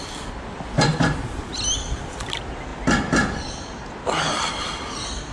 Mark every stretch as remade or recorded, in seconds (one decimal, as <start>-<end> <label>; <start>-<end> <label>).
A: 0.0-5.3 recorded